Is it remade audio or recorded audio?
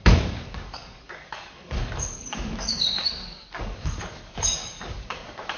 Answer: remade